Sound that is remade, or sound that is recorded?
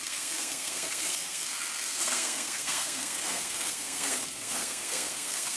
remade